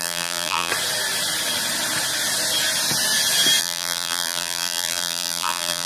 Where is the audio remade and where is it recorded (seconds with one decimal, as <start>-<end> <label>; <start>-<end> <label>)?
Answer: 0.0-0.7 remade; 0.7-3.6 recorded; 3.6-5.9 remade